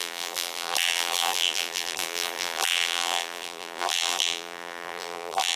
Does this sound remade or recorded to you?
remade